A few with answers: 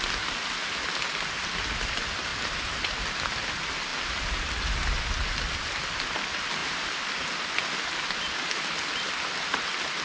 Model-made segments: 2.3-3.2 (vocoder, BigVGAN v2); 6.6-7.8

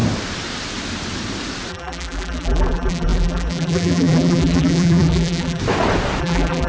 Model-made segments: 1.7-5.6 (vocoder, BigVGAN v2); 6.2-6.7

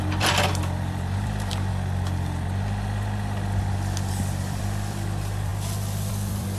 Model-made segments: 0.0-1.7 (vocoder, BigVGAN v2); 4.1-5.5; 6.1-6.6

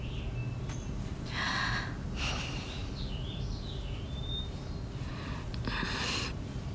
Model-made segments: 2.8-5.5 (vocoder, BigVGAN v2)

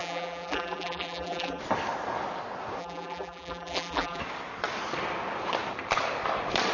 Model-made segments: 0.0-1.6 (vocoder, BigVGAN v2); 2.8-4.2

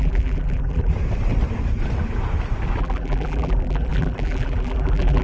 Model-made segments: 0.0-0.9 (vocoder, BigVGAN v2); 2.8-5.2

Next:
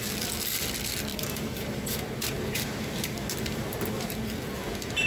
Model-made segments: 1.1-4.2 (vocoder, BigVGAN v2)